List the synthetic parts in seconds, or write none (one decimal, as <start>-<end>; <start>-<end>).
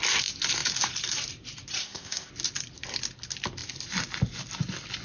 1.8-2.3